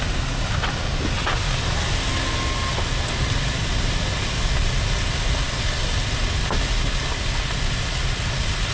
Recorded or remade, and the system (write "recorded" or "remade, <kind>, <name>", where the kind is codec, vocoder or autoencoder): recorded